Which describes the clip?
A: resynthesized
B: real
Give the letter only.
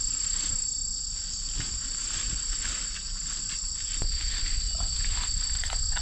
B